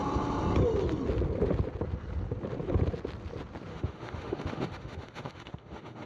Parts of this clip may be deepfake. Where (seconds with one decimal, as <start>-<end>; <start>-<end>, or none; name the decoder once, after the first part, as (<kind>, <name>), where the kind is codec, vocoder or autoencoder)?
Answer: 3.7-6.1 (autoencoder, DAC-VAE)